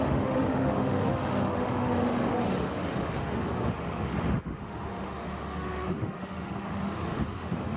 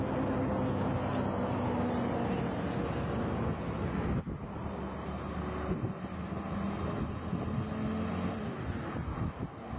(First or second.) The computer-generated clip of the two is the first